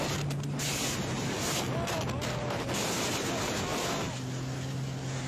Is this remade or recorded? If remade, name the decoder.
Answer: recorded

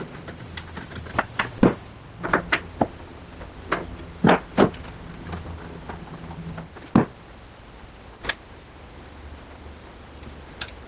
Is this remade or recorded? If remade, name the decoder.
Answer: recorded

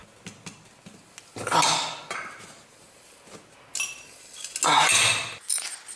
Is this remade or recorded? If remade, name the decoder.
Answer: recorded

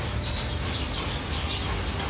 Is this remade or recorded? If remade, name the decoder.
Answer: recorded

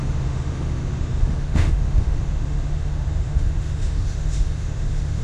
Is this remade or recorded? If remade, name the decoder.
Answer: remade, autoencoder, DAC-VAE